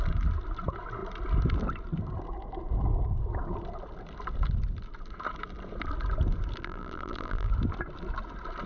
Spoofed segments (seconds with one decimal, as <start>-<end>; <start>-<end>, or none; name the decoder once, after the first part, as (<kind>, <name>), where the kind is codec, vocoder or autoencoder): 6.6-7.5 (vocoder, BigVGAN v2)